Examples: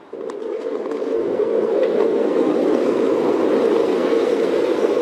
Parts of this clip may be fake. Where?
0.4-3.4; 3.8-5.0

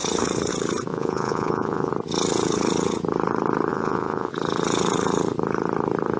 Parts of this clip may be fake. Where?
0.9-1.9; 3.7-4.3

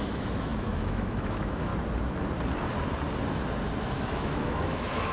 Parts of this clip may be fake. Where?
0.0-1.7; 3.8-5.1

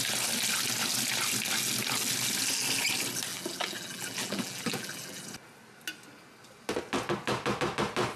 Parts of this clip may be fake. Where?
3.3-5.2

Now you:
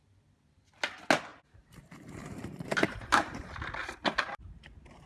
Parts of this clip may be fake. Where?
1.3-3.4; 3.8-5.1